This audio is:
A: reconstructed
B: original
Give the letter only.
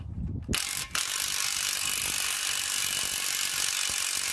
B